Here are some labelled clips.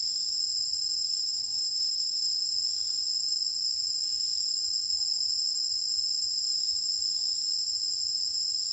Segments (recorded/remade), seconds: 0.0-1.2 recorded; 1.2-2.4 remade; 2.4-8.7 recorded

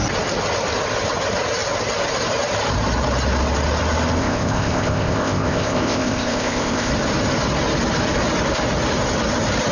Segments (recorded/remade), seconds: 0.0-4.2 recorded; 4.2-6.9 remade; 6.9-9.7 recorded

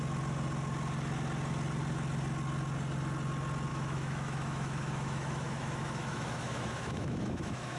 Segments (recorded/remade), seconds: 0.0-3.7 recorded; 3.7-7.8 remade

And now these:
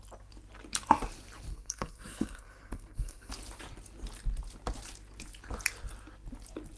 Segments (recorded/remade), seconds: 0.0-1.5 recorded; 1.5-3.3 remade; 3.3-6.8 recorded

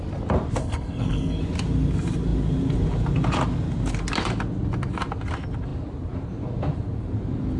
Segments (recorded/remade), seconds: 0.0-0.6 recorded; 0.6-1.4 remade; 1.4-7.6 recorded

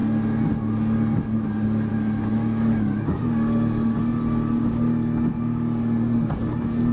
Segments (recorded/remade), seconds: 0.0-1.9 recorded; 1.9-3.2 remade; 3.2-6.9 recorded

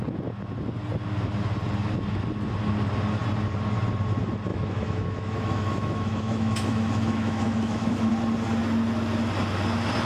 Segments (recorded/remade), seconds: 0.0-4.5 recorded; 4.5-8.1 remade; 8.1-10.1 recorded